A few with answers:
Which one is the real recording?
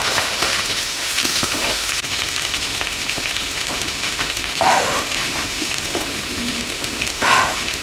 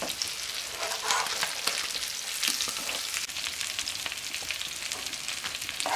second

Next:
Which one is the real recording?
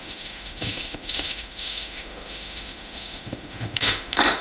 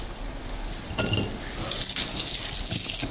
second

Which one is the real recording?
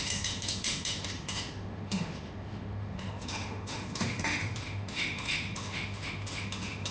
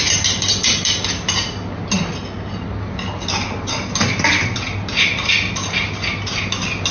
second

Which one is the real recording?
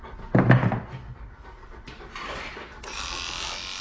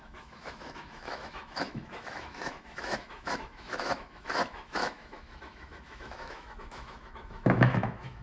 first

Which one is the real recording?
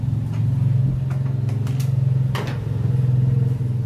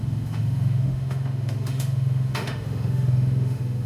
first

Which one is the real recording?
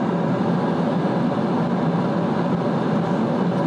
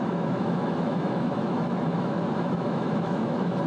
first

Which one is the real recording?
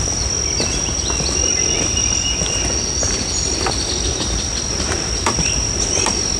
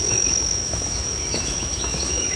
first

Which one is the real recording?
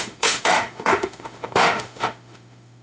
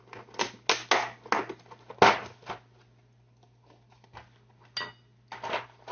second